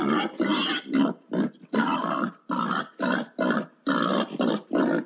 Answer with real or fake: real